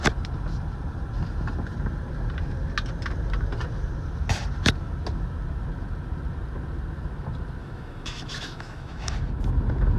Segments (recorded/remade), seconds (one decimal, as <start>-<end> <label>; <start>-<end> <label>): 0.0-7.6 recorded; 7.6-9.1 remade; 9.1-10.0 recorded